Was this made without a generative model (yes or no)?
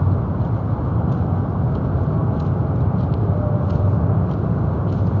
yes